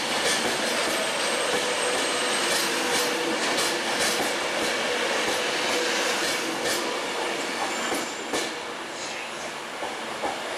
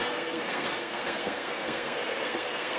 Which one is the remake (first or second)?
second